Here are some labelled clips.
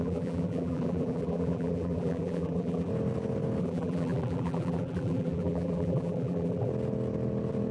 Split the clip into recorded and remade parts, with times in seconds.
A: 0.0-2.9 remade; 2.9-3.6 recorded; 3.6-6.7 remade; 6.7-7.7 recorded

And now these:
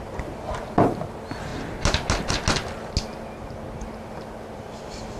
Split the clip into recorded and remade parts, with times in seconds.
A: 0.0-5.2 recorded